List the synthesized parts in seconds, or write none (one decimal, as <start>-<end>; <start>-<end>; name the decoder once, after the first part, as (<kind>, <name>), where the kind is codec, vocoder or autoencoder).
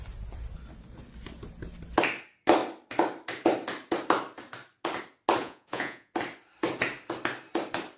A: 5.4-6.1 (vocoder, Vocos)